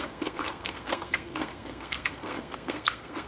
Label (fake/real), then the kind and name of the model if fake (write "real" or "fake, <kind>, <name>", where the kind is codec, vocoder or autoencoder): fake, codec, SNAC